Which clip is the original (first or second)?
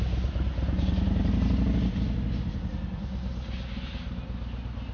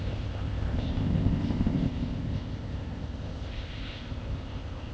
first